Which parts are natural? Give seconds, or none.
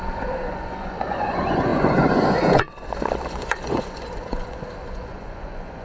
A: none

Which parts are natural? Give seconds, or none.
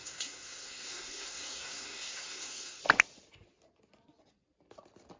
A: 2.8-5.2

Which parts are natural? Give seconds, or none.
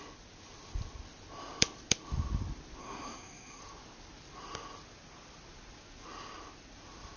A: 0.0-2.8; 3.6-7.2